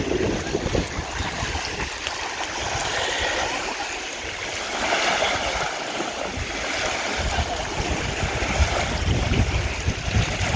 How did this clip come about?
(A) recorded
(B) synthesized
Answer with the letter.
A